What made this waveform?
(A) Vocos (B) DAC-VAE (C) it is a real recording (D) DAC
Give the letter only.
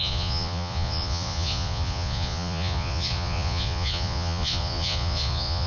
A